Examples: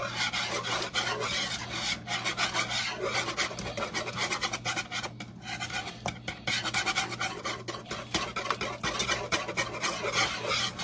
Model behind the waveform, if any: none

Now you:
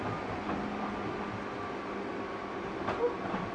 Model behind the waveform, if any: none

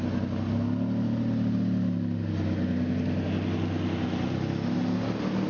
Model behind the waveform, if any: none